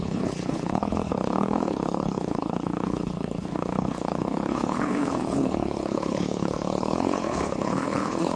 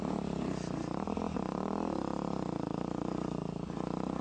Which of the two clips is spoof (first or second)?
first